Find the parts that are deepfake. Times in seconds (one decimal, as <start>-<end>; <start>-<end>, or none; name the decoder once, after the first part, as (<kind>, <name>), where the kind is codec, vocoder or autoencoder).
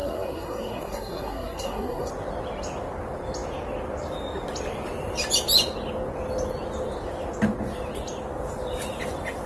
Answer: 0.0-2.1 (codec, SNAC)